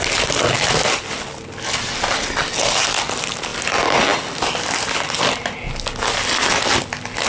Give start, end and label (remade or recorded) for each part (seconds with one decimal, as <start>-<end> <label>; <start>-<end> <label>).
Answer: 0.0-7.3 recorded

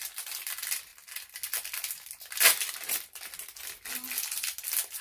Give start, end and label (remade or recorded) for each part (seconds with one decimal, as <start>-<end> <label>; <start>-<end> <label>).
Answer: 0.0-5.0 recorded

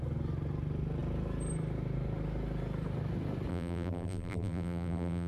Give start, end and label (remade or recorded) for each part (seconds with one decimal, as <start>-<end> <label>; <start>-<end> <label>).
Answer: 0.0-3.5 recorded; 3.5-5.3 remade

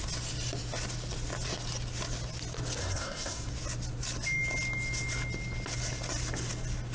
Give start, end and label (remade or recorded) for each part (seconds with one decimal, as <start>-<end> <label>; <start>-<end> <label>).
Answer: 0.0-2.8 recorded; 2.8-3.5 remade; 3.5-6.9 recorded

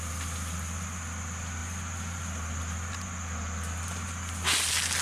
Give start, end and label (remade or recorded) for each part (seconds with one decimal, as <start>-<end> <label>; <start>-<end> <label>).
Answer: 0.0-5.0 recorded

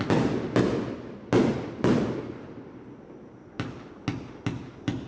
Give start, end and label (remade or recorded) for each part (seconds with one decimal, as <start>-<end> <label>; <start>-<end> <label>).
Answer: 0.0-5.1 recorded

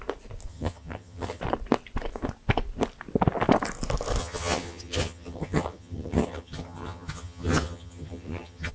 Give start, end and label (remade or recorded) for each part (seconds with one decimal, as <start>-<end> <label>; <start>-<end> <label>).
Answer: 0.0-0.5 recorded; 0.5-1.4 remade; 1.4-4.2 recorded; 4.2-8.7 remade

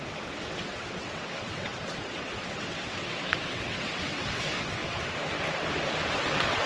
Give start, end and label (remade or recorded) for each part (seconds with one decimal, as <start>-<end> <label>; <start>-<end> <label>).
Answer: 0.0-4.8 remade; 4.8-6.1 recorded; 6.1-6.7 remade